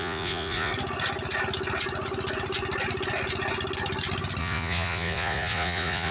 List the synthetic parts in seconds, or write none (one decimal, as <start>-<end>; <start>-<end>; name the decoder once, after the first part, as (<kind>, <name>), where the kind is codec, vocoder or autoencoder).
0.0-0.7 (vocoder, Vocos); 4.4-6.1